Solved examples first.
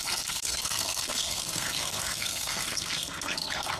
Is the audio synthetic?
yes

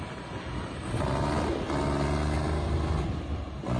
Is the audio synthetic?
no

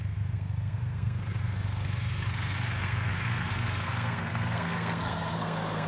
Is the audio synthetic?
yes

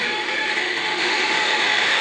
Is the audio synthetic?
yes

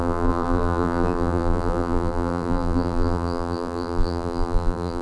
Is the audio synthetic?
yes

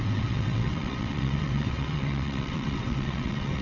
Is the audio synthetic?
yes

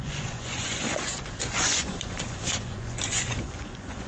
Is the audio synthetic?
yes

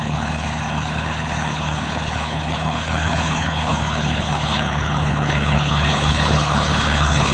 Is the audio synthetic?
yes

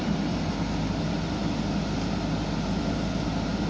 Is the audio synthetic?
no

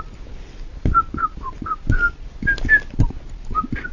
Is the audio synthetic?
no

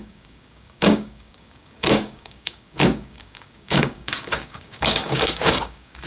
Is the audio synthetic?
yes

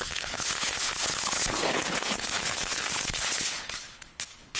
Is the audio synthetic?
yes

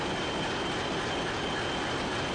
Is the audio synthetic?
no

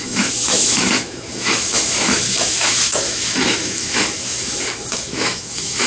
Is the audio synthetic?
yes